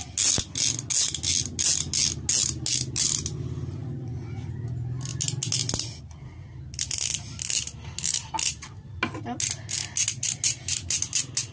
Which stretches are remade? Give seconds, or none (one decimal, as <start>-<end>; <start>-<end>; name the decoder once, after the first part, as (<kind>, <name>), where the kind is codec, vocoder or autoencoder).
3.8-4.5 (vocoder, Vocos)